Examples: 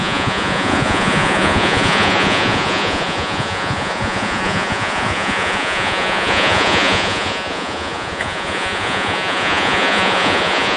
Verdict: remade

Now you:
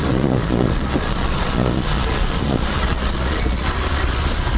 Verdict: remade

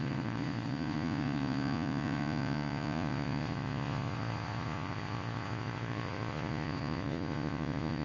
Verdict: remade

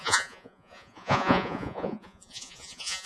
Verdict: remade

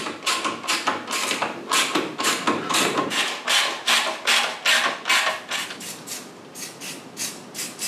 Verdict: recorded